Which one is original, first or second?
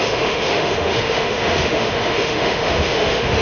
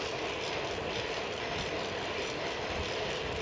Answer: second